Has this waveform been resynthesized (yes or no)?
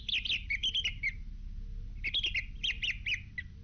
no